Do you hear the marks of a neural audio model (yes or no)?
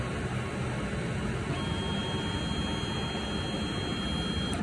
no